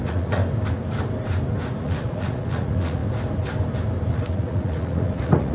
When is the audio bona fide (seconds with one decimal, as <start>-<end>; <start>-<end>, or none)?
0.4-1.8; 3.0-4.1